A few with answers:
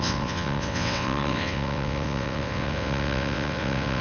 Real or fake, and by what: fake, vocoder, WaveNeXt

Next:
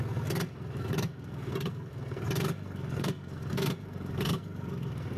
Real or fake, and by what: fake, codec, SNAC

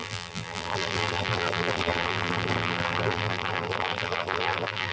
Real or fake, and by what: fake, vocoder, BigVGAN v2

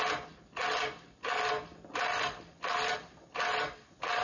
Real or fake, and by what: real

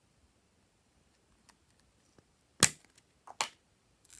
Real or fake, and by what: real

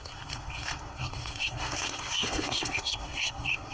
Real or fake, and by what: fake, codec, SNAC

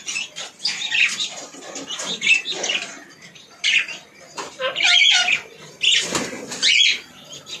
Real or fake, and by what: real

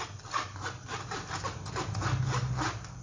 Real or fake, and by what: real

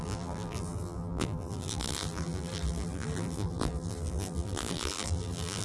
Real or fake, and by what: fake, vocoder, BigVGAN v2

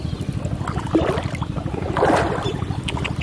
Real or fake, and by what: real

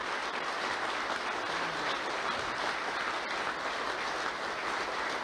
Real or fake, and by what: real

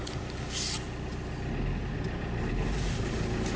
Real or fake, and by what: real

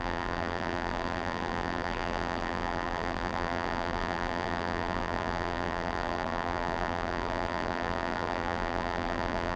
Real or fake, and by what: fake, vocoder, BigVGAN v2